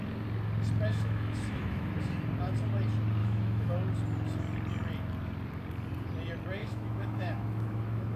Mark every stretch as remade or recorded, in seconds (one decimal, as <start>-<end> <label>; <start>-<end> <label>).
0.0-0.9 recorded; 0.9-1.9 remade; 1.9-3.2 recorded; 3.2-3.7 remade; 3.7-6.6 recorded; 6.6-8.2 remade